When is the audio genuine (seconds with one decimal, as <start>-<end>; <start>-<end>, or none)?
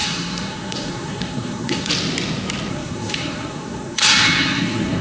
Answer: 1.9-2.7